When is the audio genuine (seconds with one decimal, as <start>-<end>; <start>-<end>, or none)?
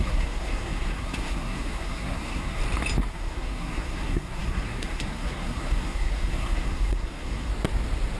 2.6-3.1; 7.5-8.2